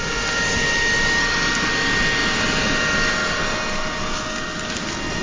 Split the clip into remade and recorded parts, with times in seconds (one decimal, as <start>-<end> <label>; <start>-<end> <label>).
0.0-5.2 recorded